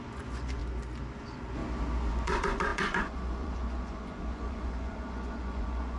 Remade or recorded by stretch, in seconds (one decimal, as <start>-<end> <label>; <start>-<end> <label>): 0.0-0.6 remade; 0.6-1.2 recorded; 1.2-1.6 remade; 1.6-2.1 recorded; 2.1-6.0 remade